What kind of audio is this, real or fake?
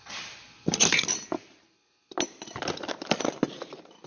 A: real